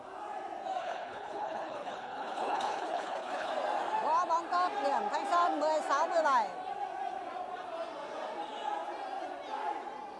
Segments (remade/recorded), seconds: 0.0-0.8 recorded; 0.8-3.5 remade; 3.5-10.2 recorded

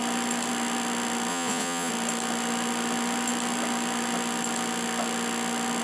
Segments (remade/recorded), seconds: 0.0-1.3 recorded; 1.3-1.9 remade; 1.9-5.8 recorded